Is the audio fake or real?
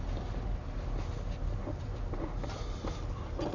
real